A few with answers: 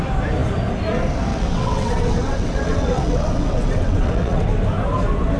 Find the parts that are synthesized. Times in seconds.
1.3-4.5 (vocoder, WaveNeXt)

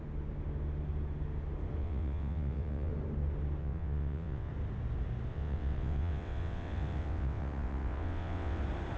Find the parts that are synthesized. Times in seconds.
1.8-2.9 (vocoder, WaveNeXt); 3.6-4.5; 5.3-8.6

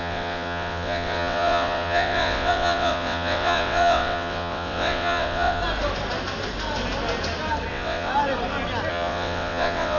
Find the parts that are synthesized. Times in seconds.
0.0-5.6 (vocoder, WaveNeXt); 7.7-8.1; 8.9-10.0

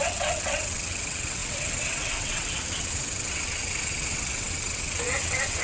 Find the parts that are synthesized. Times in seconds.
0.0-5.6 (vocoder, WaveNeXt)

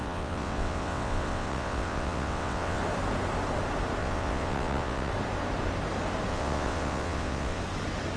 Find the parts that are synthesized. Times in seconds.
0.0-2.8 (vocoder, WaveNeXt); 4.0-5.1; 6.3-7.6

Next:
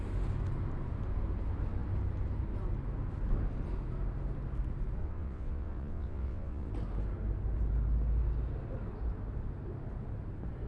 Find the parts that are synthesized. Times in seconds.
5.0-6.7 (vocoder, WaveNeXt)